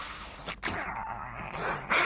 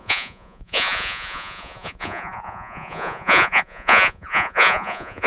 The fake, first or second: second